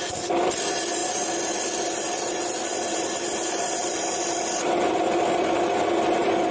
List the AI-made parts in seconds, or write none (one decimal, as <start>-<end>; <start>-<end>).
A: none